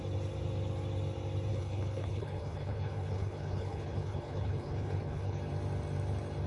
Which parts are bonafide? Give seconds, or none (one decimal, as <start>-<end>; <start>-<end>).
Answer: 0.0-1.5; 5.4-6.5